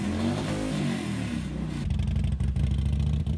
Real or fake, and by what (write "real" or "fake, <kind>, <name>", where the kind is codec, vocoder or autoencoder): real